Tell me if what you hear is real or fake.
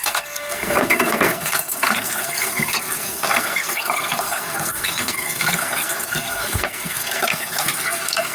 fake